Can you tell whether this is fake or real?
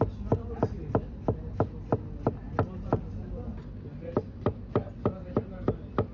real